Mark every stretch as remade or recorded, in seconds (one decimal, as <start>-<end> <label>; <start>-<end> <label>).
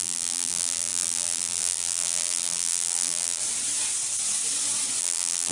0.0-3.4 remade; 3.4-5.0 recorded; 5.0-5.5 remade